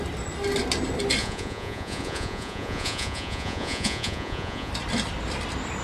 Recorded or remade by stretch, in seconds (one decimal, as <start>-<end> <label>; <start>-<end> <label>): 0.0-1.2 recorded; 1.2-4.7 remade; 4.7-5.8 recorded